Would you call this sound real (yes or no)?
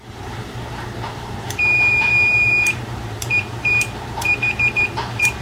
no